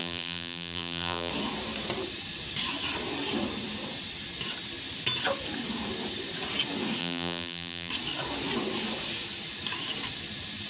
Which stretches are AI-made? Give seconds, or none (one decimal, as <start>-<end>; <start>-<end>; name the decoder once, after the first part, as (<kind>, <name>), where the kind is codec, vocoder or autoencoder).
0.0-1.3 (vocoder, BigVGAN v2); 7.0-7.9